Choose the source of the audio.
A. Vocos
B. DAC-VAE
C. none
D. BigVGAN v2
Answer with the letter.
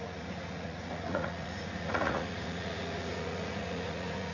A